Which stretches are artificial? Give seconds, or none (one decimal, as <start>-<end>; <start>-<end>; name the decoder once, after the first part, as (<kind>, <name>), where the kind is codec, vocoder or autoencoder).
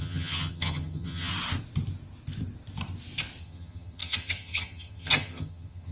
0.0-1.3 (vocoder, HiFi-GAN); 3.4-5.9